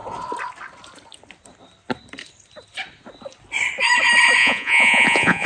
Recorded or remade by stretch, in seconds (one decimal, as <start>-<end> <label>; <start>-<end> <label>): 0.0-4.4 recorded; 4.4-5.5 remade